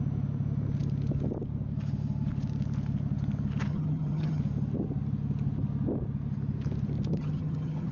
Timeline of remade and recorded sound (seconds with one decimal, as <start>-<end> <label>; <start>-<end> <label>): 0.0-3.7 recorded; 3.7-4.4 remade; 4.4-7.1 recorded; 7.1-7.9 remade